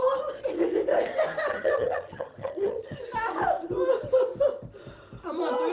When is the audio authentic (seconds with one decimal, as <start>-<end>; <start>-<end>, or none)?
0.0-1.5; 3.0-5.7